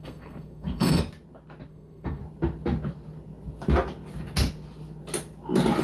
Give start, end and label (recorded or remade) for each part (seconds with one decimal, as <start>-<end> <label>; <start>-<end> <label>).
0.0-1.0 remade; 1.0-1.7 recorded; 1.7-2.2 remade; 2.2-5.8 recorded